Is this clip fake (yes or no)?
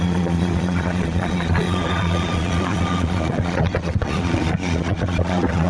yes